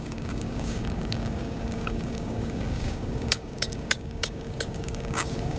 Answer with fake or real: fake